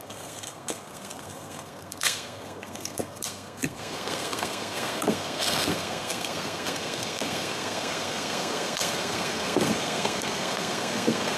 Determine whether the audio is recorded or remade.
remade